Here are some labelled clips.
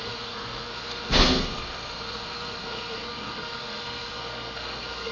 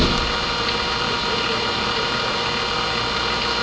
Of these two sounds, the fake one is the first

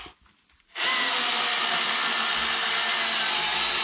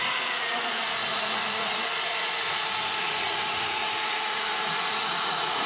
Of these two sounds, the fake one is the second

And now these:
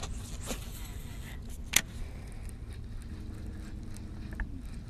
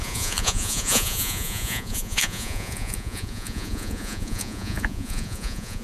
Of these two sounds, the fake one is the second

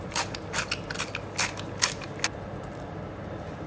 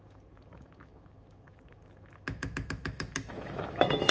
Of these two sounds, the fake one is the second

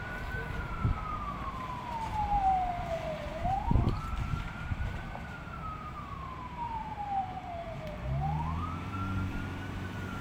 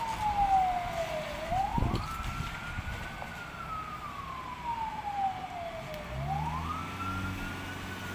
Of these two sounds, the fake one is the first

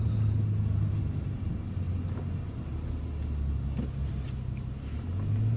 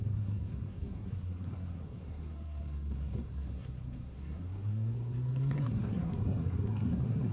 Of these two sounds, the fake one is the second